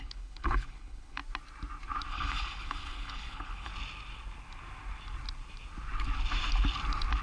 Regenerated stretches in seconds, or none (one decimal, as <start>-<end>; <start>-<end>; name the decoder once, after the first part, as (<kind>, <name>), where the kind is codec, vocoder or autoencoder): 0.0-1.2 (codec, HILCodec); 2.1-3.7